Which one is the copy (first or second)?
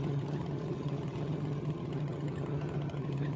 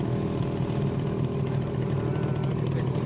first